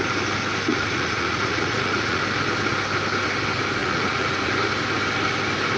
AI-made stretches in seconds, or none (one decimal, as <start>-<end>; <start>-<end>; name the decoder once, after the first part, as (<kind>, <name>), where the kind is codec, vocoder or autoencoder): 0.7-2.2 (vocoder, Vocos); 3.8-4.5